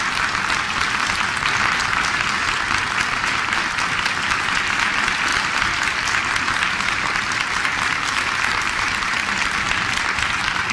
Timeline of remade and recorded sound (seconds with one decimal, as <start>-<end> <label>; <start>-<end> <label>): 0.0-7.7 recorded; 7.7-9.0 remade; 9.0-10.7 recorded